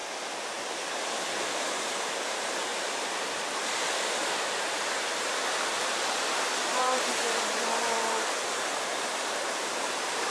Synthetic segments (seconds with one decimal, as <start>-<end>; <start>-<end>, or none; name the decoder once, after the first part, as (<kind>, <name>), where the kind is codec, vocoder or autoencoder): 1.7-2.7 (vocoder, BigVGAN v2); 4.5-7.8; 8.5-10.3